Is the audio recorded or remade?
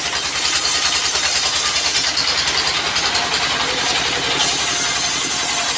recorded